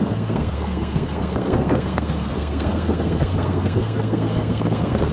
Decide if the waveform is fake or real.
fake